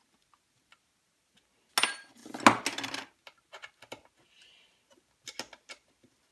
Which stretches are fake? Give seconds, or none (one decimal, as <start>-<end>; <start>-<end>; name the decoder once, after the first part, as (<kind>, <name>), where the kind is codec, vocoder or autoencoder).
none